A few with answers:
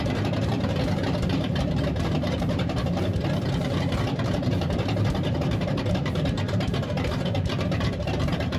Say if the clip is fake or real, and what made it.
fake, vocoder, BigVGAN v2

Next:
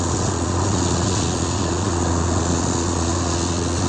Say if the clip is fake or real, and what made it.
fake, vocoder, Vocos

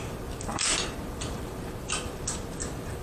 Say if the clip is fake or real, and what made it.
fake, vocoder, BigVGAN v2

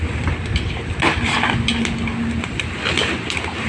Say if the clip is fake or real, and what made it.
real